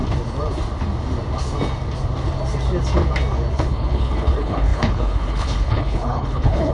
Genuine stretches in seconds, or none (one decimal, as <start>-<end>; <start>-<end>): 0.0-3.5